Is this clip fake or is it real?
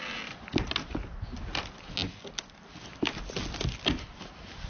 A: real